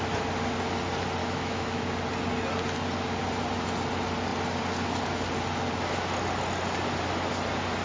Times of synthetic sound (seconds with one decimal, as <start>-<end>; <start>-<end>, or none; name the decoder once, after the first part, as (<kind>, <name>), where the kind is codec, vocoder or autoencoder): 1.2-1.9 (autoencoder, DAC-VAE)